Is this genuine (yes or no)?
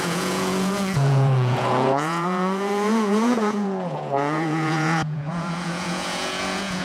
no